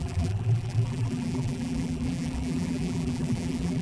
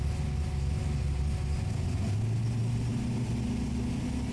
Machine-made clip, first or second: first